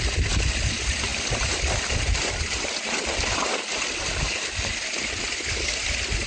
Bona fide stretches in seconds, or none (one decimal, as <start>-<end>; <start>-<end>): 0.0-6.3